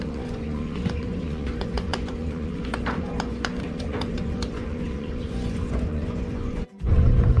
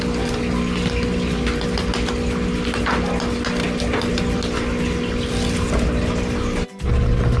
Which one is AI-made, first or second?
first